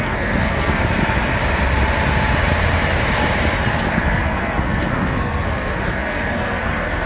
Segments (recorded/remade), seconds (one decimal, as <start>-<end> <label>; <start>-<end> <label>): 0.0-0.8 remade; 0.8-3.9 recorded; 3.9-7.1 remade